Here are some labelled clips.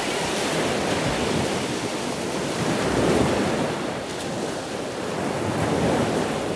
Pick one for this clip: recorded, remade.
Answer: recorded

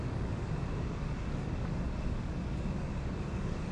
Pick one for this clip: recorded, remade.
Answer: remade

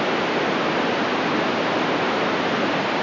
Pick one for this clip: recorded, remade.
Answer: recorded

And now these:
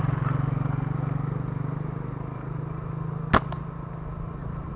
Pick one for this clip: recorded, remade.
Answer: recorded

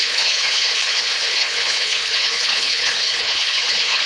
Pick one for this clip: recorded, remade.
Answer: remade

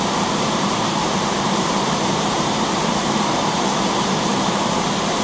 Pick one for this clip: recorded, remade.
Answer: remade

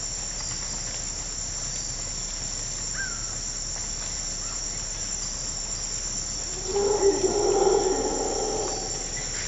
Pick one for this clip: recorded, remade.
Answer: recorded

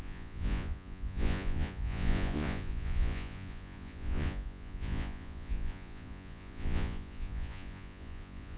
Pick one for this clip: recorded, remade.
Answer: remade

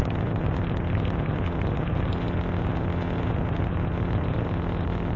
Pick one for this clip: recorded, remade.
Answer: remade